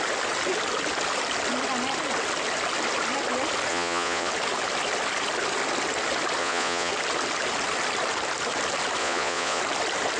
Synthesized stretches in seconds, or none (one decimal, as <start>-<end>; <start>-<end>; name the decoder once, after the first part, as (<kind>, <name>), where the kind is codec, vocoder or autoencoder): 3.7-4.3 (vocoder, Vocos); 6.4-6.9; 9.0-9.6